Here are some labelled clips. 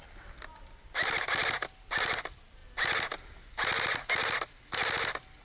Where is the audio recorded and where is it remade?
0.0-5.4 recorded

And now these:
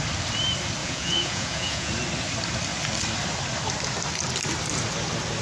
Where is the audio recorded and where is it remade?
0.0-0.8 recorded; 0.8-1.9 remade; 1.9-5.4 recorded

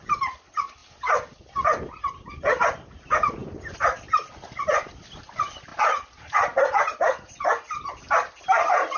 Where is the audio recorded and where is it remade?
0.0-9.0 recorded